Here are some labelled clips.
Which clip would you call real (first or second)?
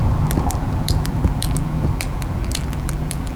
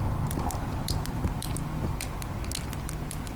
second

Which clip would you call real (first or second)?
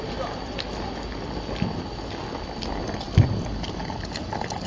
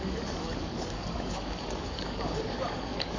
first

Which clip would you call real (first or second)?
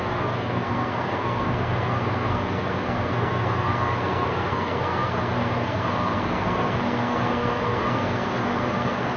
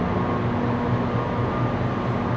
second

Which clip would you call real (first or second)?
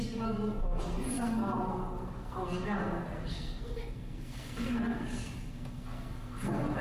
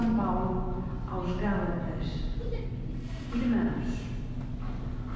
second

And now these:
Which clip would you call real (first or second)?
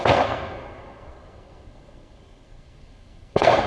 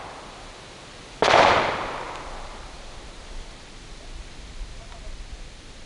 second